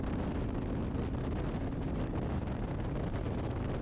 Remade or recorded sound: recorded